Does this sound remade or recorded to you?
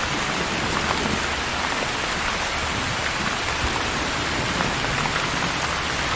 recorded